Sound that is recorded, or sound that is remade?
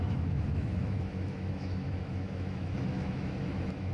remade